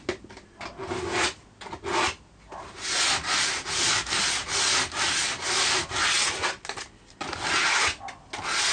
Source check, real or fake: real